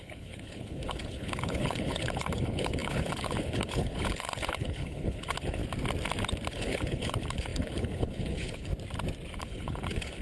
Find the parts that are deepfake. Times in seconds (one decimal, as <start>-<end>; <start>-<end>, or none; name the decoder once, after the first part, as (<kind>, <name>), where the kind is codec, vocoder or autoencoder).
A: 0.0-5.6 (codec, HILCodec); 6.5-8.7; 9.4-10.2